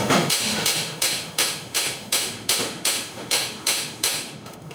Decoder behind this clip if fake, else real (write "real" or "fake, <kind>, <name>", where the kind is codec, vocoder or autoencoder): fake, autoencoder, DAC-VAE